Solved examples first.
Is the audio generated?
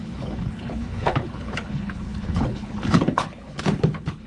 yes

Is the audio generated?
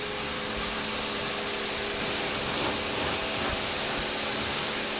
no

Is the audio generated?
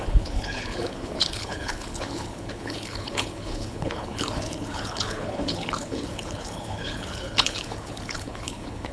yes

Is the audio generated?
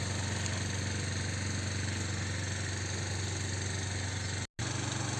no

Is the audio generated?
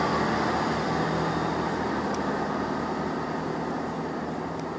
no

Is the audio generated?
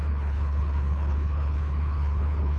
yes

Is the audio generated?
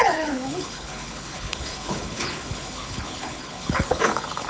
yes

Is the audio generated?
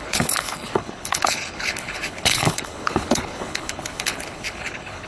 yes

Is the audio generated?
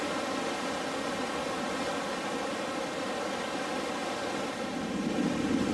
no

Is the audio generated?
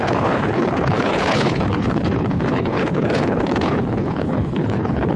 yes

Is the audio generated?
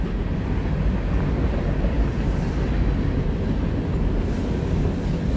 no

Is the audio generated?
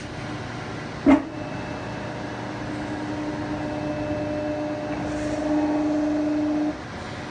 no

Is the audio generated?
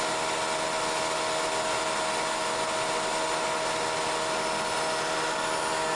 no